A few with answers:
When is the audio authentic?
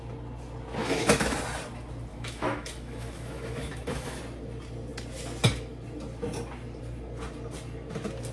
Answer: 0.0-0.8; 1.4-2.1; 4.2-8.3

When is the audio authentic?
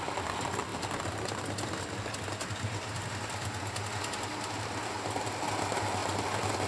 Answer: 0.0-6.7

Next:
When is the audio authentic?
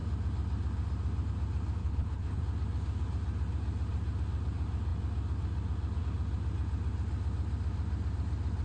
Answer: 0.0-1.8; 2.4-8.6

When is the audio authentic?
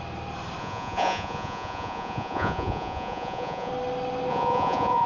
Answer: 0.0-0.6; 3.7-4.3